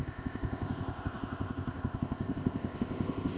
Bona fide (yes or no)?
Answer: no